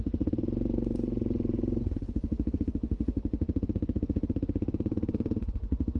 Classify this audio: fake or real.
fake